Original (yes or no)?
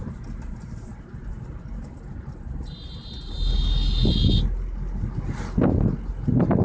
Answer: yes